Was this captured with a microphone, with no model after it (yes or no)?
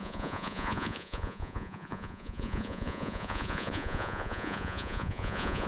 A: no